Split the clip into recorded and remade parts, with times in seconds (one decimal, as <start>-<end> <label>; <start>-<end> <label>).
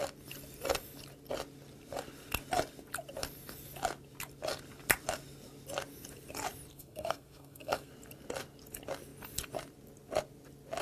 0.0-6.7 recorded; 6.7-7.9 remade; 7.9-10.8 recorded